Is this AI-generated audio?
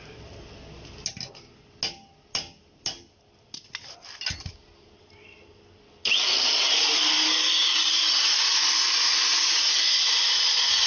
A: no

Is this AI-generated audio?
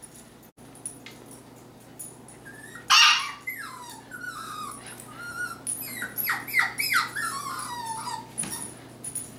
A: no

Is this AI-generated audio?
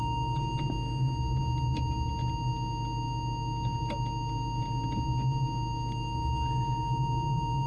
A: no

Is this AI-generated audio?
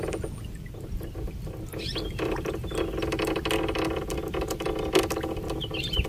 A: no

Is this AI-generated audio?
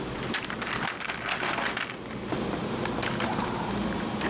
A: no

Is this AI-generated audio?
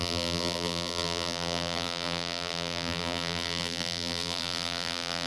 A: yes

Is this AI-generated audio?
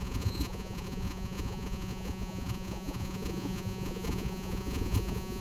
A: yes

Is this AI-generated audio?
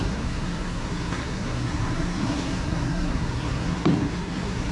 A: yes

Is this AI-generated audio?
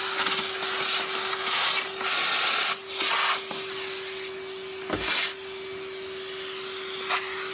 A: no